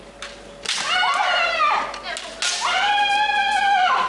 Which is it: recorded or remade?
recorded